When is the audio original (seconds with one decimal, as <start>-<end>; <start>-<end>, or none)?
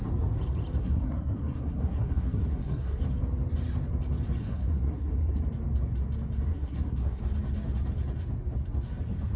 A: 0.0-0.8; 3.0-4.4; 5.4-6.5; 7.2-9.4